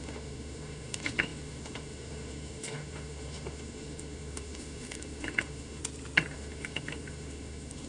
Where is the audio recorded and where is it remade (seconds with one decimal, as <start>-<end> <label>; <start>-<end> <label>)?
0.0-5.8 remade; 5.8-6.3 recorded; 6.3-7.9 remade